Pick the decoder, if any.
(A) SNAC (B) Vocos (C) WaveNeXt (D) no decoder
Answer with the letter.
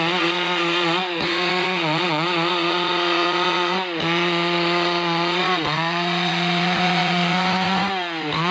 B